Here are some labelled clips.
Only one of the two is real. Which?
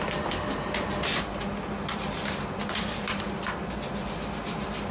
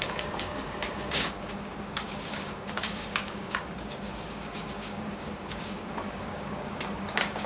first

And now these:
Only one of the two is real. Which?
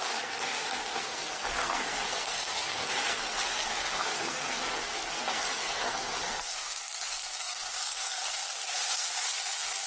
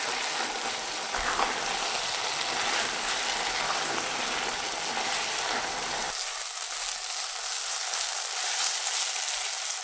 second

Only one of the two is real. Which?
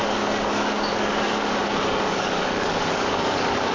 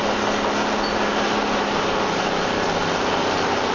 second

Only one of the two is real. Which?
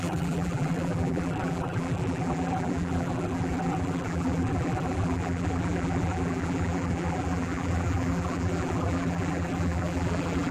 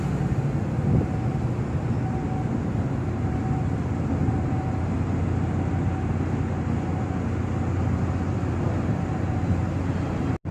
second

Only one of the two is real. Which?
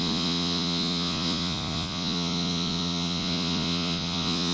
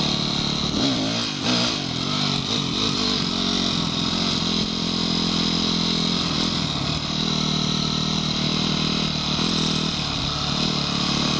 second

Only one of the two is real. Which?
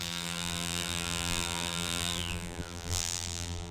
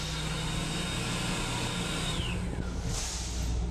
second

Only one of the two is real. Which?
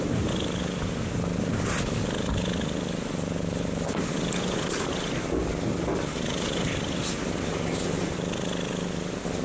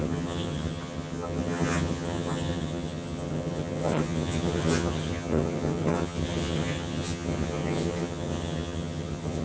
first